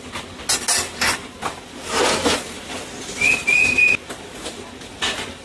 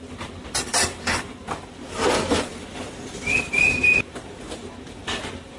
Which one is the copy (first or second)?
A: second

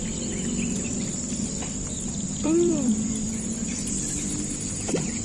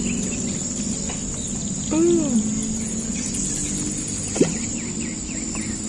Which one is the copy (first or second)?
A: first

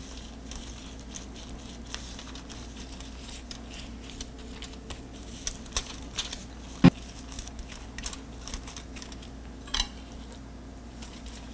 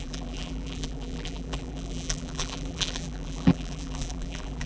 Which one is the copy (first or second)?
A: second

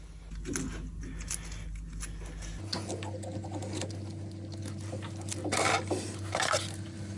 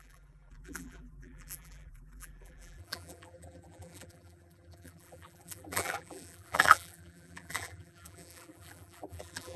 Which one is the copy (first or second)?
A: second